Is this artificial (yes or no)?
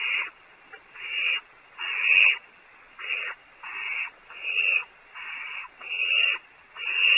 yes